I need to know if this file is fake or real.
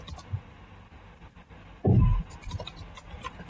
real